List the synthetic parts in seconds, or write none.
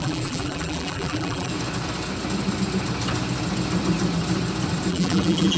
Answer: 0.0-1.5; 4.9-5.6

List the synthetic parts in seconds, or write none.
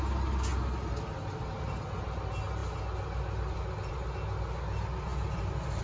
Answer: none